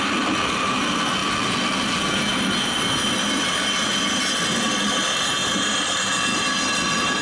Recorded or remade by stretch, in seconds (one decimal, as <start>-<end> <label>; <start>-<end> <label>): 0.0-7.2 recorded